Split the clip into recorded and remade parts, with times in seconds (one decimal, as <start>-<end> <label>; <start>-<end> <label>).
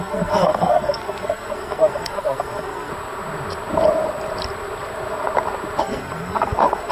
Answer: 0.0-2.9 remade; 2.9-5.8 recorded; 5.8-6.9 remade